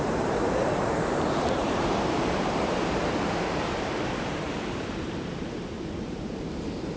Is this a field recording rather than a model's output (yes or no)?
no